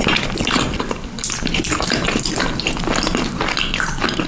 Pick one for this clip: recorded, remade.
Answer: recorded